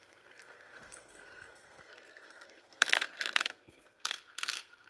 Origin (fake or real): fake